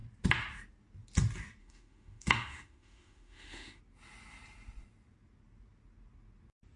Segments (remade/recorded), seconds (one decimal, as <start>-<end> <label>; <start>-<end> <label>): 0.0-1.6 recorded; 1.6-3.8 remade; 3.8-6.8 recorded